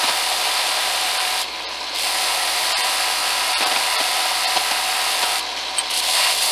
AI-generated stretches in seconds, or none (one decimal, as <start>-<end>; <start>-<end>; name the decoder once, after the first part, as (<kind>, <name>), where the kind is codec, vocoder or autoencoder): none